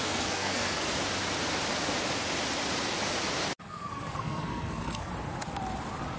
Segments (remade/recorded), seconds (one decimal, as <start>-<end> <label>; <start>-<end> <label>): 0.0-0.9 remade; 0.9-3.6 recorded; 3.6-5.1 remade; 5.1-6.2 recorded